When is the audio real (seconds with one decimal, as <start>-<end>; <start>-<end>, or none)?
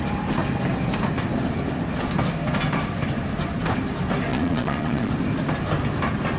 0.0-4.3; 5.1-6.4